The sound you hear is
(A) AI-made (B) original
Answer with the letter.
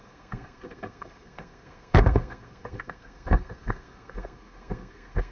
A